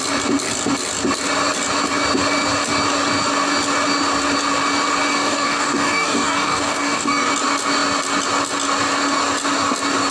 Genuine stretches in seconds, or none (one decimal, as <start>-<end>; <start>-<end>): 0.0-5.1; 7.3-10.1